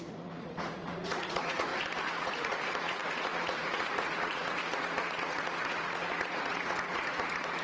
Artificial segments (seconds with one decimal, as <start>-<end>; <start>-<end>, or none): 0.0-1.7; 2.2-7.6